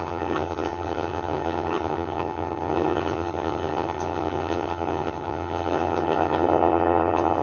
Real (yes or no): no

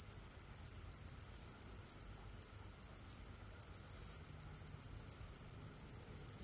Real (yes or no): yes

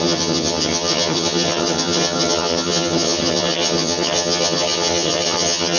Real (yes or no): no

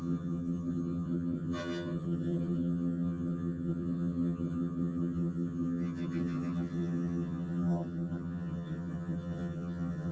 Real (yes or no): no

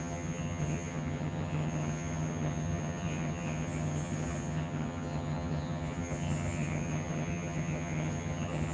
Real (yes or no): no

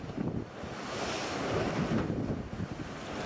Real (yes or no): yes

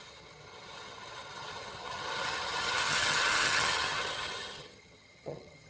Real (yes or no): no